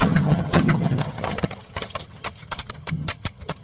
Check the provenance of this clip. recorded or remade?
remade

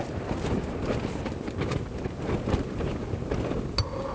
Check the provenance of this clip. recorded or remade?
recorded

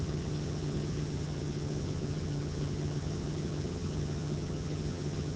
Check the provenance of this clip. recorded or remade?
remade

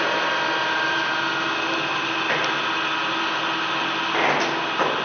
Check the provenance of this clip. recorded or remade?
recorded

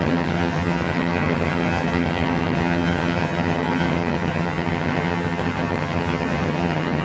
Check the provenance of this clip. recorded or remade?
remade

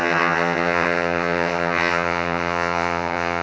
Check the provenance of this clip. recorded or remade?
remade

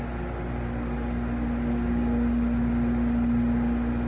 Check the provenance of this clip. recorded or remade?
recorded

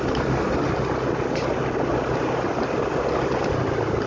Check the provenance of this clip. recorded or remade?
recorded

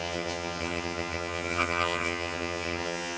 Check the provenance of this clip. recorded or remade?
remade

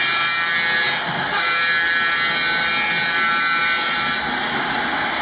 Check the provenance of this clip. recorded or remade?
recorded